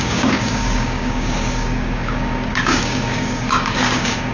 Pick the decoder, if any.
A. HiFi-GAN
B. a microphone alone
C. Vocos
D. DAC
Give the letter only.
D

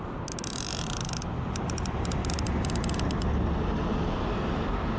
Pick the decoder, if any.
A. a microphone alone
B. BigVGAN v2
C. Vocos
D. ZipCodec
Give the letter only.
A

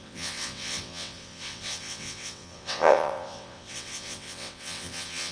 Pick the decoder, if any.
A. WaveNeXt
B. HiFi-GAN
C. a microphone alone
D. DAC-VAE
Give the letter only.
A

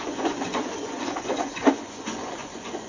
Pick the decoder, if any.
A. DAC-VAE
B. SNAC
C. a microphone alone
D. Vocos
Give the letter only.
D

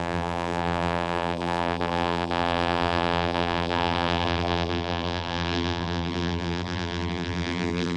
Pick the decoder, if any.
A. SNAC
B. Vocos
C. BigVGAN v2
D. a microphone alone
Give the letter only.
C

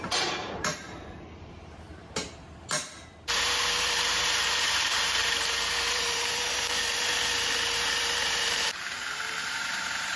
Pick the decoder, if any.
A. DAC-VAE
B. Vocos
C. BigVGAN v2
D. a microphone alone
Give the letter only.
C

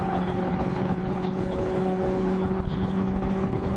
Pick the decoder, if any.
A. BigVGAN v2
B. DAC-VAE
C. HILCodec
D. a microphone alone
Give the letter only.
C